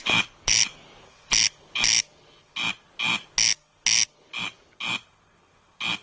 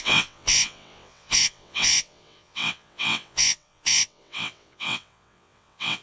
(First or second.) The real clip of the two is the first